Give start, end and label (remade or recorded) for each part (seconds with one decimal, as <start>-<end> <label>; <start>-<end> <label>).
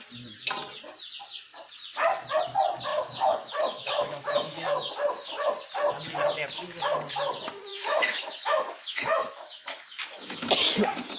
0.0-2.9 recorded; 2.9-4.9 remade; 4.9-7.7 recorded; 7.7-10.5 remade; 10.5-11.2 recorded